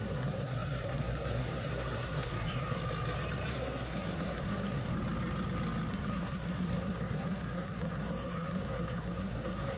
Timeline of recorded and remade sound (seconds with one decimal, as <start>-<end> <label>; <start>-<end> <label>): 0.0-2.8 remade; 2.8-3.5 recorded; 3.5-4.9 remade; 4.9-5.9 recorded; 5.9-9.8 remade